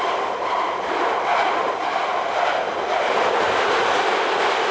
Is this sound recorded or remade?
recorded